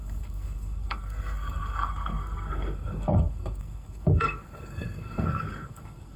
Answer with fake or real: fake